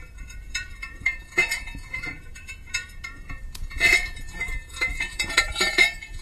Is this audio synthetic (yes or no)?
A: yes